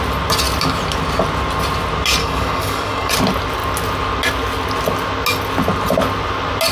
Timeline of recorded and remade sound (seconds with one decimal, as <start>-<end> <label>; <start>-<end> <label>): 0.0-2.2 recorded; 2.2-3.1 remade; 3.1-6.7 recorded